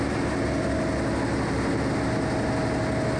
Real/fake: real